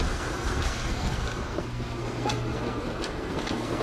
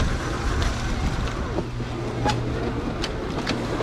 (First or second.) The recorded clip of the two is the second